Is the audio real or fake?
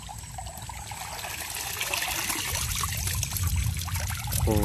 real